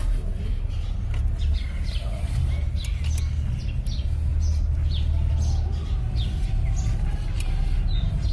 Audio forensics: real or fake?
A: real